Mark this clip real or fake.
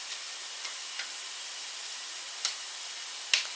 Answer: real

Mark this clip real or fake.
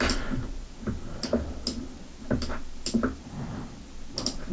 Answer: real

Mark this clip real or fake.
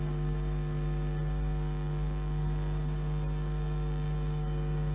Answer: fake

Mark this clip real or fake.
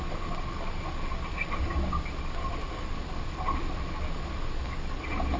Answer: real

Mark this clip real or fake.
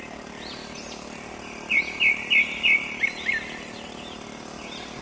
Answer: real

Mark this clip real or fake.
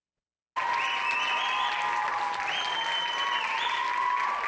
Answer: real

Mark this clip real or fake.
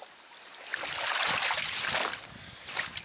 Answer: real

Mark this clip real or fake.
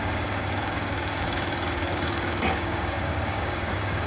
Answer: fake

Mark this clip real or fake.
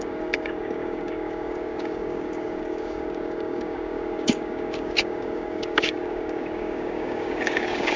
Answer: fake